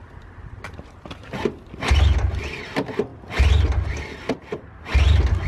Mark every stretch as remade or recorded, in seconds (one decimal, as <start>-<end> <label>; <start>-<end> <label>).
0.0-5.5 recorded